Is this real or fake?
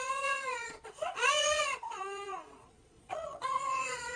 fake